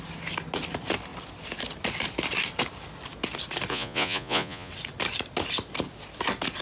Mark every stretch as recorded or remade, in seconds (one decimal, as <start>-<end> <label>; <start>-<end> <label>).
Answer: 0.0-3.7 recorded; 3.7-4.7 remade; 4.7-6.6 recorded